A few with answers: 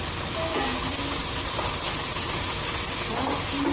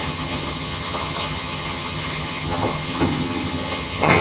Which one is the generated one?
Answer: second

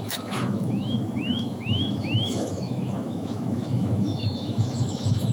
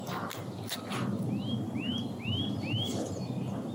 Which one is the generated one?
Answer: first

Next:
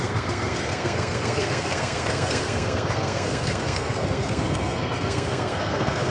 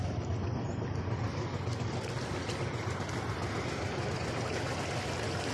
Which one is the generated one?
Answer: first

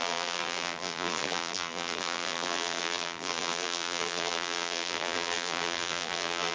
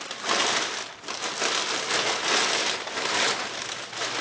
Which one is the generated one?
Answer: first